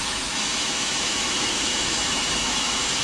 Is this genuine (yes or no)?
no